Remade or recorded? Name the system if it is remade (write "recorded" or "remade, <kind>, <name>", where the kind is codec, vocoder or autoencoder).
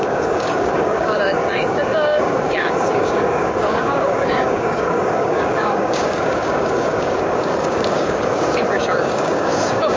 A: remade, codec, DAC